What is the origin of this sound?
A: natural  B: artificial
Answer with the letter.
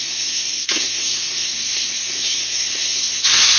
B